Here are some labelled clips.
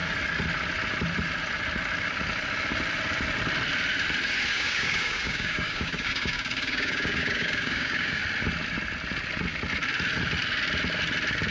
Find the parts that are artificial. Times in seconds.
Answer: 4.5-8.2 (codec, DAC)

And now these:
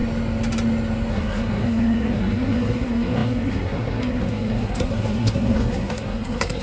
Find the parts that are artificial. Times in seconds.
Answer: 1.1-6.6 (codec, SNAC)

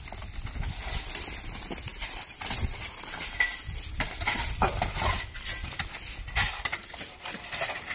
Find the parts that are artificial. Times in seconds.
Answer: none